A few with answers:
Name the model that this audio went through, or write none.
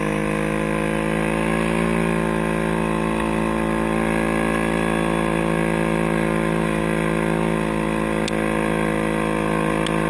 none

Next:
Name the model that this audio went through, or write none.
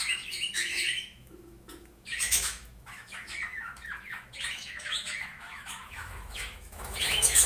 autoencoder, DAC-VAE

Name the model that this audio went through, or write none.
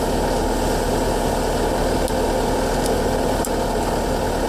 none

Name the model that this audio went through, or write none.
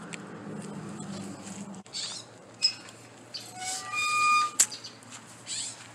none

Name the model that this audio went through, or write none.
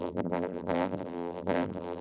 vocoder, BigVGAN v2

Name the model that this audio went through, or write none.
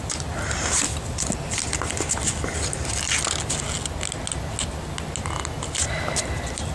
none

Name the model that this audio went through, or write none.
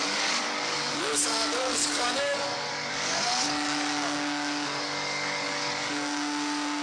codec, DAC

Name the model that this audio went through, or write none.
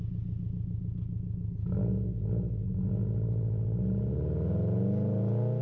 none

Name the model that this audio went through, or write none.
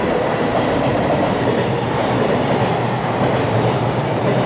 vocoder, BigVGAN v2